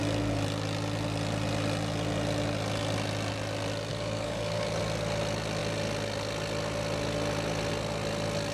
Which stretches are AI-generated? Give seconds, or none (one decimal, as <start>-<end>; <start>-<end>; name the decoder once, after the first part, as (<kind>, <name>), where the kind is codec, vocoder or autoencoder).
3.9-4.8 (codec, DAC)